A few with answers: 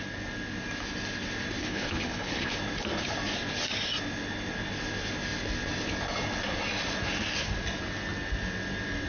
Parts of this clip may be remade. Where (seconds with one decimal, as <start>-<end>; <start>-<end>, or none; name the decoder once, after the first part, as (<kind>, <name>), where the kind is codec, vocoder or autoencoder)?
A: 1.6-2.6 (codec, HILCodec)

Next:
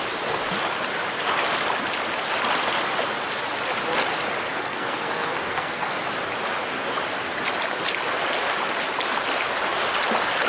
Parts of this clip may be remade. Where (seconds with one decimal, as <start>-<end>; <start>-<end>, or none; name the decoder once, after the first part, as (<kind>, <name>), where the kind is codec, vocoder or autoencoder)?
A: 4.5-6.0 (codec, SNAC)

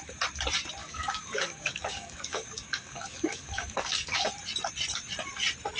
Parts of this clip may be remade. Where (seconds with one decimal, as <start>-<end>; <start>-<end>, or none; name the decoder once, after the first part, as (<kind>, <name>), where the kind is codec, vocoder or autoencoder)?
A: 0.8-4.3 (codec, DAC)